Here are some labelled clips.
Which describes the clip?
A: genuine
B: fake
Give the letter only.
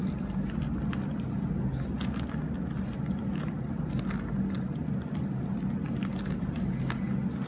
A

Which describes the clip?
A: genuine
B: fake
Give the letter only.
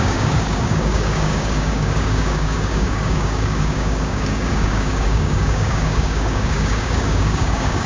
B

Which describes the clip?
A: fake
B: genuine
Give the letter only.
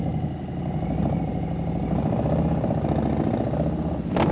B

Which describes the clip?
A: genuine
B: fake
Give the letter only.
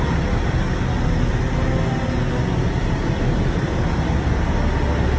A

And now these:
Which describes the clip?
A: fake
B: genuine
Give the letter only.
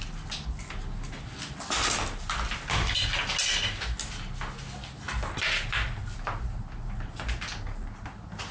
B